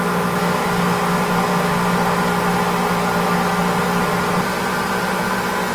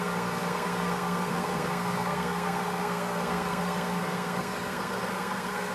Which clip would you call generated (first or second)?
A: second